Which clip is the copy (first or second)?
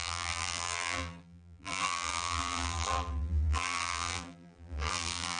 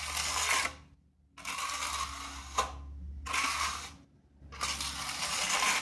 first